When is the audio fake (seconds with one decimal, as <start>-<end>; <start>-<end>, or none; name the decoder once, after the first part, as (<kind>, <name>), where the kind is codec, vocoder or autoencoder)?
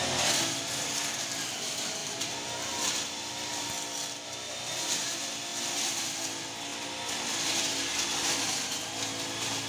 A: 2.0-4.4 (vocoder, BigVGAN v2); 5.5-6.0